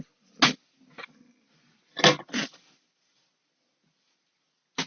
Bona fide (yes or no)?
yes